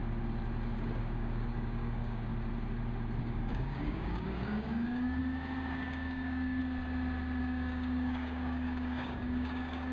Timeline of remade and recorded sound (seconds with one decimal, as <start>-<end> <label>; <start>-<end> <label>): 0.0-1.0 recorded; 1.0-2.3 remade; 2.3-3.2 recorded; 3.2-5.2 remade; 5.2-5.7 recorded; 5.7-6.6 remade; 6.6-7.4 recorded; 7.4-9.9 remade